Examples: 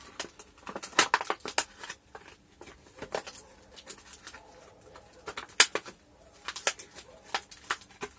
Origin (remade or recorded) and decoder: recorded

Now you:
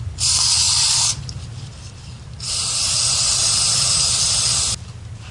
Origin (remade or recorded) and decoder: recorded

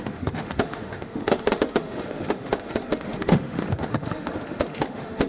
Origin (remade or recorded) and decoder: remade, autoencoder, DAC-VAE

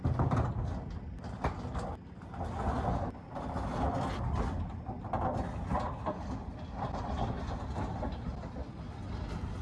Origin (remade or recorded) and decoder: recorded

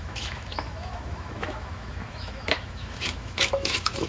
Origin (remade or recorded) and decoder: remade, autoencoder, DAC-VAE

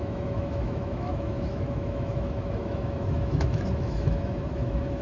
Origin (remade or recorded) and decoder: remade, autoencoder, DAC-VAE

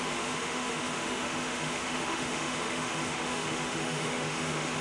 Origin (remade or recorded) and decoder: remade, autoencoder, DAC-VAE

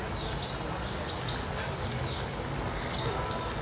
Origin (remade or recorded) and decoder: recorded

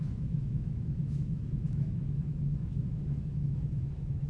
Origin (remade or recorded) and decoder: remade, autoencoder, DAC-VAE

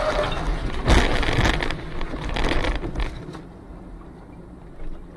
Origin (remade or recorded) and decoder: recorded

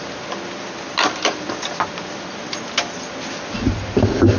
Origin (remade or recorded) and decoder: recorded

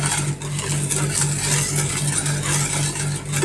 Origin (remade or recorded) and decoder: recorded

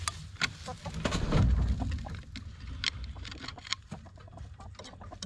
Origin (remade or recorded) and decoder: recorded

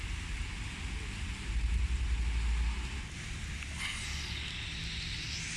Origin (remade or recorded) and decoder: recorded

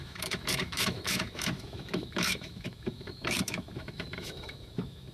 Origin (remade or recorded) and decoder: remade, autoencoder, DAC-VAE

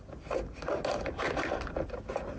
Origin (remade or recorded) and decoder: recorded